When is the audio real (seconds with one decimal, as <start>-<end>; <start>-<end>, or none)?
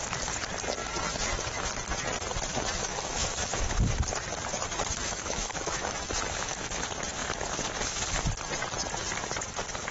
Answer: 0.0-0.8; 1.7-2.5; 3.8-5.0; 6.8-9.9